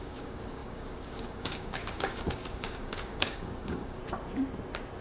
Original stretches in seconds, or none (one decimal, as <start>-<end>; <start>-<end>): 4.0-5.0